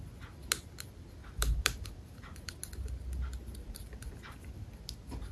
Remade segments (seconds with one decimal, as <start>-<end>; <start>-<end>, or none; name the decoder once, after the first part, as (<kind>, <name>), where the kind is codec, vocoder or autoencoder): 1.2-2.5 (vocoder, BigVGAN v2); 3.6-4.6